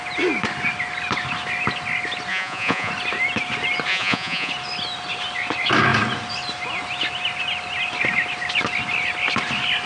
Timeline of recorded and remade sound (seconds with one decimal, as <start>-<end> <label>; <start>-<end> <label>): 0.0-2.3 recorded; 2.3-2.9 remade; 2.9-3.9 recorded; 3.9-4.5 remade; 4.5-9.9 recorded